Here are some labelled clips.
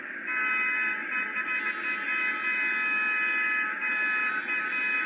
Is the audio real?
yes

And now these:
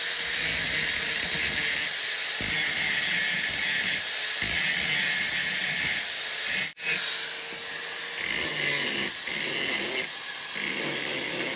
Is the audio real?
yes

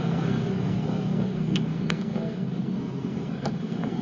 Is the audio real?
no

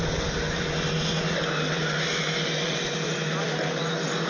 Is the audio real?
yes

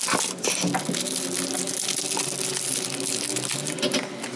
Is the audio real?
yes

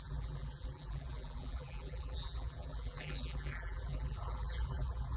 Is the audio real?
no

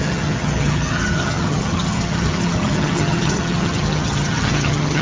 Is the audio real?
no